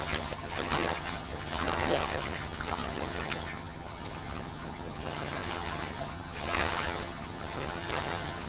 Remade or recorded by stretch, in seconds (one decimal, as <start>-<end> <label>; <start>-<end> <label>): 0.0-8.5 remade